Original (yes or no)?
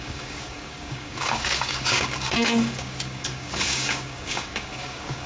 no